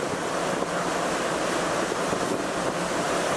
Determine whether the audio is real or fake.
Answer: real